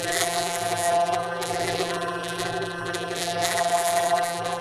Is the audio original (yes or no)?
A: no